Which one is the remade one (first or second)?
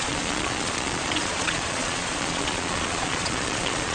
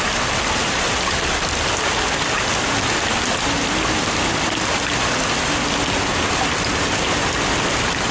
first